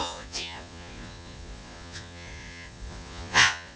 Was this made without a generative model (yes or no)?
no